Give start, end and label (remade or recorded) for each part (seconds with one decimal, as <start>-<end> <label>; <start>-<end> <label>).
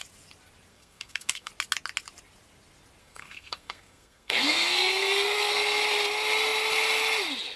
0.0-0.7 recorded; 0.7-1.5 remade; 1.5-3.0 recorded; 3.0-5.8 remade; 5.8-7.6 recorded